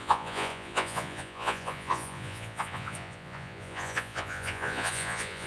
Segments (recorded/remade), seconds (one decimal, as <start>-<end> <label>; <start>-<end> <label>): 0.0-5.5 remade